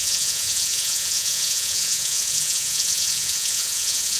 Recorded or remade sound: remade